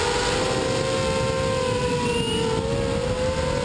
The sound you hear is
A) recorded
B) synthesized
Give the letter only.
A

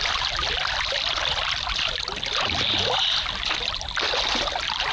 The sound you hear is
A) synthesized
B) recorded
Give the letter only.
B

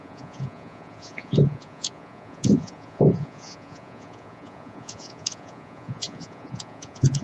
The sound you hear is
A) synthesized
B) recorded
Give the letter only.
A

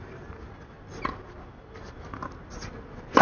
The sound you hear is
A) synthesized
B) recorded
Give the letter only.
B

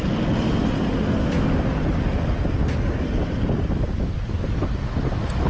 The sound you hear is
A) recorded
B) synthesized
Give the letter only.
A